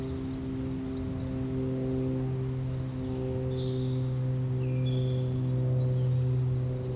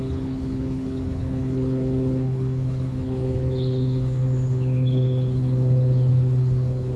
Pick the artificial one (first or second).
second